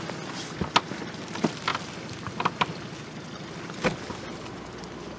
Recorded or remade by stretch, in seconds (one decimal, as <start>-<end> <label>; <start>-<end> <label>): 0.0-1.7 recorded; 1.7-3.7 remade; 3.7-5.2 recorded